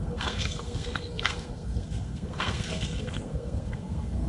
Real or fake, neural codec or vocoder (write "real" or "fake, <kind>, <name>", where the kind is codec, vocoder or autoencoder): fake, codec, SNAC